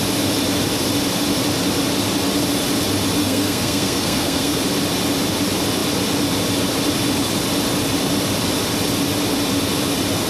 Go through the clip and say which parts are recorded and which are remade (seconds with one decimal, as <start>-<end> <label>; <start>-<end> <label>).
0.0-3.2 recorded; 3.2-4.6 remade; 4.6-10.3 recorded